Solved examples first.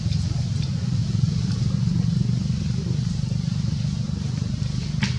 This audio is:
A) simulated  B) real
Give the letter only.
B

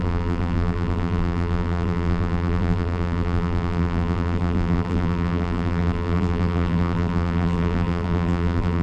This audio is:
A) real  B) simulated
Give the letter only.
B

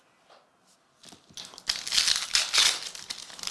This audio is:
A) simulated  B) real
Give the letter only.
B